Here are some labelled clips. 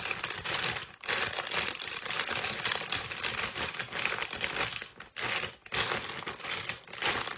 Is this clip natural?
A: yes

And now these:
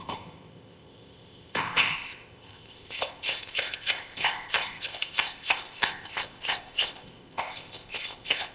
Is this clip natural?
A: no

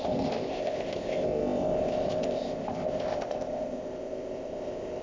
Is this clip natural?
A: no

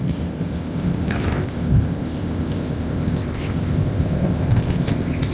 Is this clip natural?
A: no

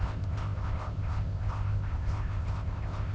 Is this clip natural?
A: no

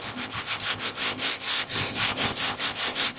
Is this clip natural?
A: no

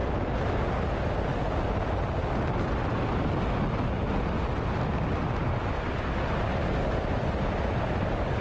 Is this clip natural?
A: yes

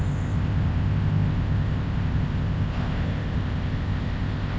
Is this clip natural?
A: no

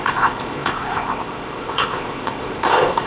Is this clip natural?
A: no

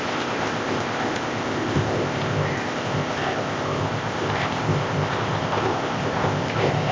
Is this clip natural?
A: no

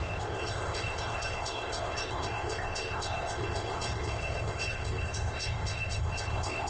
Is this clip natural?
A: no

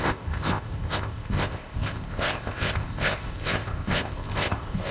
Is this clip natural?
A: no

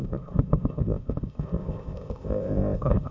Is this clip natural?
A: no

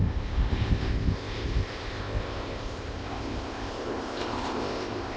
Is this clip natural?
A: no